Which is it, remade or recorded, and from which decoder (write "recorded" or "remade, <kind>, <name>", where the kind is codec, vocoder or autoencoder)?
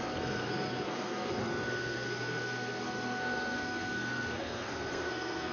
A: remade, codec, SNAC